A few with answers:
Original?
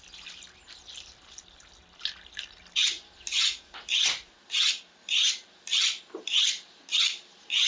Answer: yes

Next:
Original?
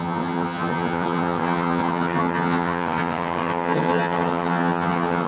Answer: no